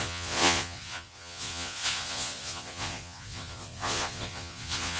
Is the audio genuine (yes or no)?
no